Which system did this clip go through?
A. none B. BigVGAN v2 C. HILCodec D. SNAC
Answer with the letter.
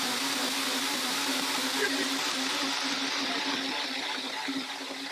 A